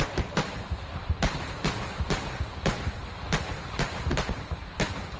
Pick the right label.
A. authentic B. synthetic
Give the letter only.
B